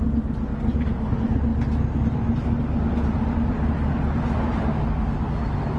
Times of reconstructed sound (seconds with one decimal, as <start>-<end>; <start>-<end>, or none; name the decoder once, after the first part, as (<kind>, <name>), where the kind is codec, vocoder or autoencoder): none